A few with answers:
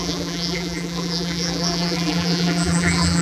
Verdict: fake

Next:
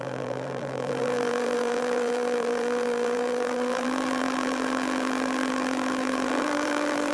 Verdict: fake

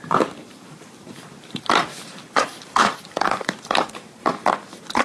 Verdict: fake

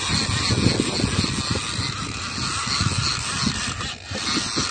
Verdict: real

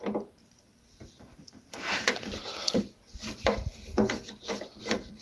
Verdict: fake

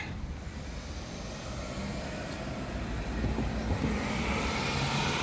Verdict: real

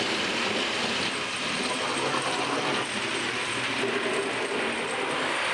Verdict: fake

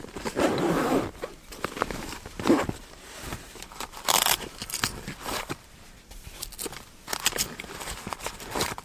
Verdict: fake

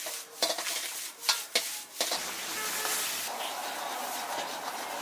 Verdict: real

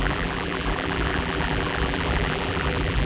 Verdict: fake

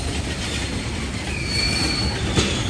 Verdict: real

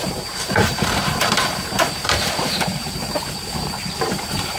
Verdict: fake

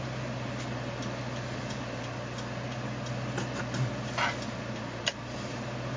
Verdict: real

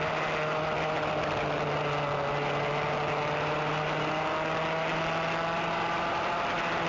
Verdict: real